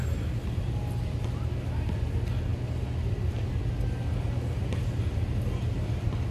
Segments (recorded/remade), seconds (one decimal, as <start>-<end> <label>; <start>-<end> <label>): 0.0-6.3 recorded